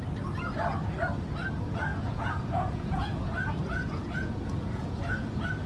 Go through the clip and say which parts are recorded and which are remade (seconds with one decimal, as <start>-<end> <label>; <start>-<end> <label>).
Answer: 0.0-1.9 recorded; 1.9-5.3 remade; 5.3-5.7 recorded